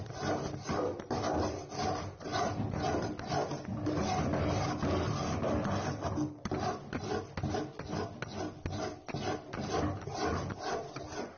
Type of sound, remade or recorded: recorded